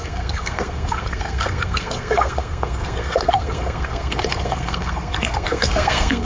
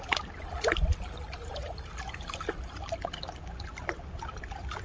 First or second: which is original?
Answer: second